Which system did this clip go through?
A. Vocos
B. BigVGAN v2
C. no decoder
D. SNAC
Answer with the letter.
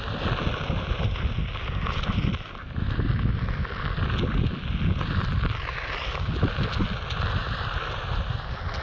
C